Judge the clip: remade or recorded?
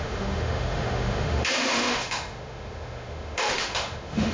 remade